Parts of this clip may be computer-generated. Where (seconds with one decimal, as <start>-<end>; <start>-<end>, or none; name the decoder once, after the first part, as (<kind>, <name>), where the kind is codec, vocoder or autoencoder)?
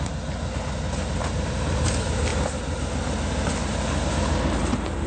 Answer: none